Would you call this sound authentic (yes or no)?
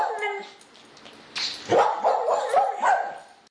yes